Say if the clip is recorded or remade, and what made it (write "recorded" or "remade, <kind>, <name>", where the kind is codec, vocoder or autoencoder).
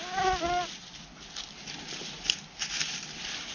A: recorded